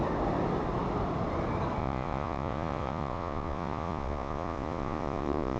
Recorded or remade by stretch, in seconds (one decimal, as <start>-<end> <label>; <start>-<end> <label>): 0.0-1.8 recorded; 1.8-5.6 remade